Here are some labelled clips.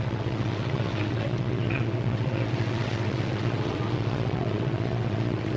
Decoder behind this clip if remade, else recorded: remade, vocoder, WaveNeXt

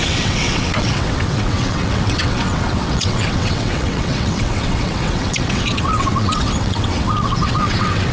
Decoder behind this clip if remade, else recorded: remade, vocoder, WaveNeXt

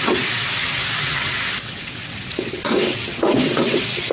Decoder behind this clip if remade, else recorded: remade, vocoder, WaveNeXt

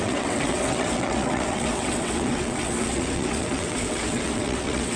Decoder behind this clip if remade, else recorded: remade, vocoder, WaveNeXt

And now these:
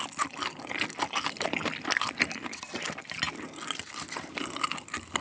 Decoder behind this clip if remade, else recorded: recorded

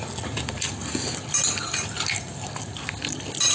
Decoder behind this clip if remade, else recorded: recorded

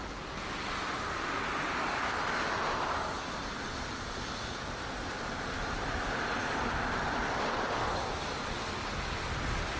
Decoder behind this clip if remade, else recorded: recorded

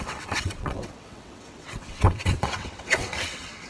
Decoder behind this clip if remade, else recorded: remade, vocoder, WaveNeXt